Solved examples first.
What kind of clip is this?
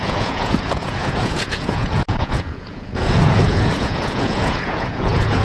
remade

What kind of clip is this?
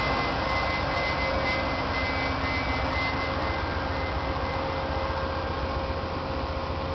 recorded